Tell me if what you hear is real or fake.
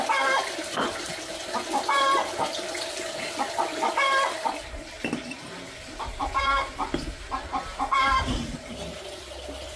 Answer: fake